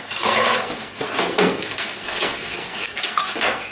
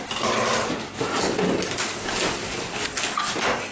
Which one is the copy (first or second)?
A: first